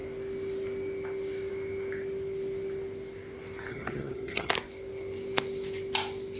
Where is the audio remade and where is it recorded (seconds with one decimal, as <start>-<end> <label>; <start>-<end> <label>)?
0.0-3.7 recorded; 3.7-4.5 remade; 4.5-6.4 recorded